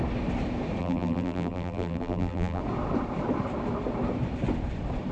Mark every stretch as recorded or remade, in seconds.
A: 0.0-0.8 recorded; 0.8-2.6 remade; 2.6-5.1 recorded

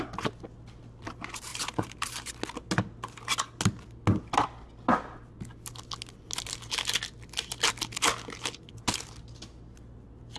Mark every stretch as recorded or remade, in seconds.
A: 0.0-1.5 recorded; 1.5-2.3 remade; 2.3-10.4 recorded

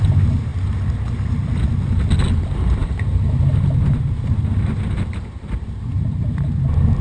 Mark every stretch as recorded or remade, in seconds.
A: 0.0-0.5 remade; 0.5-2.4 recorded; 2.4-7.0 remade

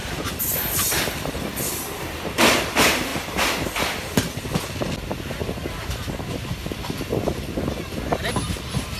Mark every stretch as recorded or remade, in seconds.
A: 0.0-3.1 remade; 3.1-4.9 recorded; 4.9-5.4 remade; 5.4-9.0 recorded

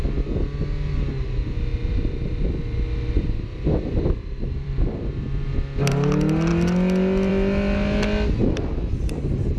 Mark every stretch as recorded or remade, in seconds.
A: 0.0-1.7 recorded; 1.7-5.5 remade; 5.5-9.6 recorded

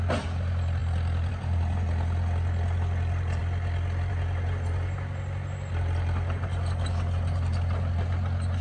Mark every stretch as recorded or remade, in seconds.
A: 0.0-8.6 recorded